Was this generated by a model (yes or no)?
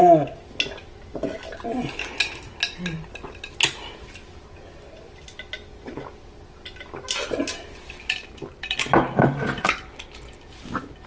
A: no